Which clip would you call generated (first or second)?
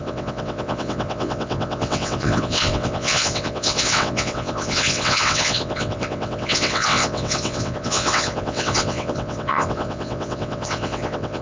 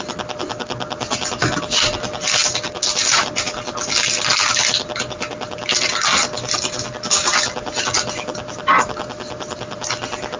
first